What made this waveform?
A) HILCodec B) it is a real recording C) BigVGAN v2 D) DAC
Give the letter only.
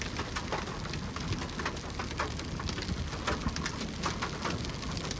B